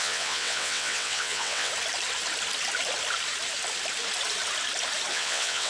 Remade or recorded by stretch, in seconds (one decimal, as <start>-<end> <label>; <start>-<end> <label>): 0.0-1.7 remade; 1.7-5.1 recorded; 5.1-5.7 remade